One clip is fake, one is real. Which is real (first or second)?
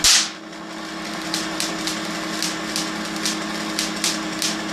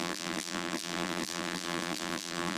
first